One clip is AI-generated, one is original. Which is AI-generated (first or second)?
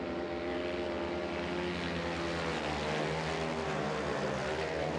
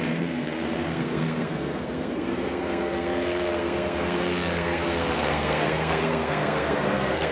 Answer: second